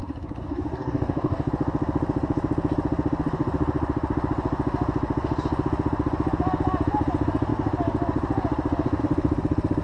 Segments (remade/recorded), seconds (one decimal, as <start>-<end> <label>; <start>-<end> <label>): 0.0-1.5 remade; 1.5-9.8 recorded